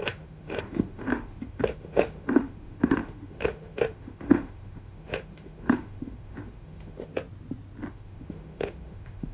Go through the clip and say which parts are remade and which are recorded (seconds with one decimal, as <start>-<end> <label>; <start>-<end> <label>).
0.0-7.1 remade; 7.1-7.9 recorded; 7.9-9.3 remade